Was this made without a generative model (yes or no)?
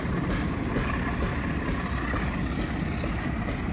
yes